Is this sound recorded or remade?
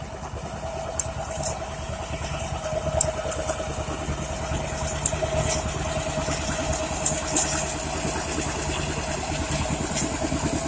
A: recorded